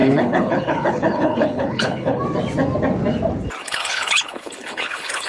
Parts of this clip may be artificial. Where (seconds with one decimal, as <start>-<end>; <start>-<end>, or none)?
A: 0.0-2.2; 3.6-5.3